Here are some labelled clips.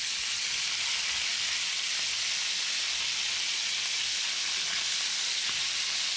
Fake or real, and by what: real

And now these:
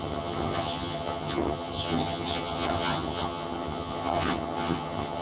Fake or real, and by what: fake, vocoder, HiFi-GAN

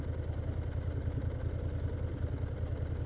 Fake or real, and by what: real